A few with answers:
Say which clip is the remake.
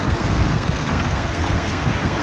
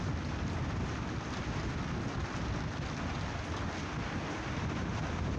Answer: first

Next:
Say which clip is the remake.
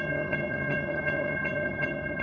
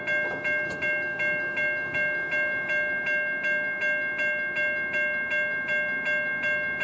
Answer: first